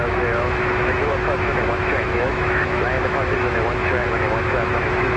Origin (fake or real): fake